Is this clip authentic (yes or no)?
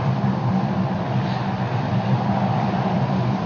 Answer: no